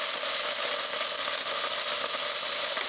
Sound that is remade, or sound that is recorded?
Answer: recorded